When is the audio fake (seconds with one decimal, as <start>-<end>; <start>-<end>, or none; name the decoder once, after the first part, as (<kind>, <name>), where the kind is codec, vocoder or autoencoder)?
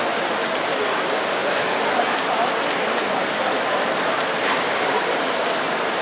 none